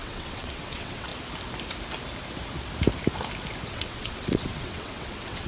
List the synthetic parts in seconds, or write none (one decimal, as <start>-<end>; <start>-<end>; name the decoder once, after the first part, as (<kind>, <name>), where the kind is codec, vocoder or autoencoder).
0.0-1.1 (vocoder, WaveNeXt); 3.7-5.5